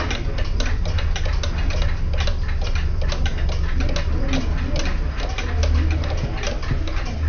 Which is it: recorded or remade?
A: recorded